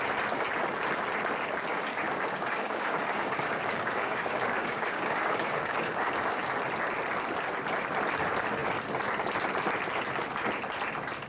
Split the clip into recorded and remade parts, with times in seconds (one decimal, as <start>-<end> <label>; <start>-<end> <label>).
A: 0.0-1.7 recorded; 1.7-6.5 remade; 6.5-11.3 recorded